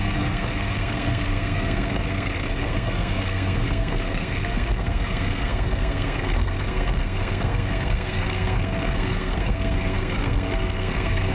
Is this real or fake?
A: fake